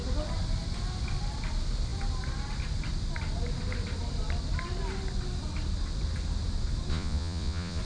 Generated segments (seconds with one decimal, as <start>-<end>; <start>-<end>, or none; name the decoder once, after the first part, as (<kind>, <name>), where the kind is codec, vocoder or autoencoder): 6.9-7.8 (vocoder, Vocos)